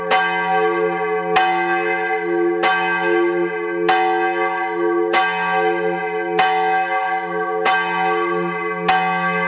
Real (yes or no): yes